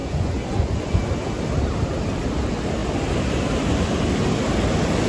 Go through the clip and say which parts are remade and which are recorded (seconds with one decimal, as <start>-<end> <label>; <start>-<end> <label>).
0.0-1.0 remade; 1.0-5.1 recorded